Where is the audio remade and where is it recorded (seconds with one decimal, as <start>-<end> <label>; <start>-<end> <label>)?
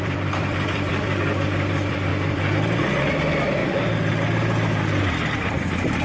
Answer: 0.0-3.6 remade; 3.6-5.1 recorded; 5.1-6.0 remade